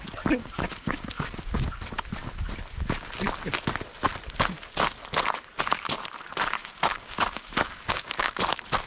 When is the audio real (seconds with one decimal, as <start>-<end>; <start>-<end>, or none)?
0.0-0.4; 1.7-6.6; 8.4-8.9